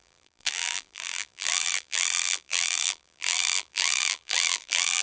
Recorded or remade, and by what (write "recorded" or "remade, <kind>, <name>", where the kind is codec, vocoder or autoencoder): remade, vocoder, BigVGAN v2